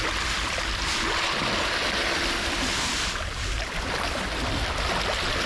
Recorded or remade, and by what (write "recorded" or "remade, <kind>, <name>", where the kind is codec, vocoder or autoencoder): recorded